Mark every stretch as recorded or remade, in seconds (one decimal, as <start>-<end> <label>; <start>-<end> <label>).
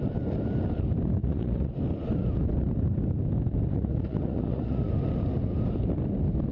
0.0-1.2 recorded; 1.2-1.7 remade; 1.7-3.7 recorded; 3.7-4.9 remade; 4.9-6.5 recorded